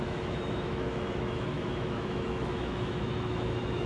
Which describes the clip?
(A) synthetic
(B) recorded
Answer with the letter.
A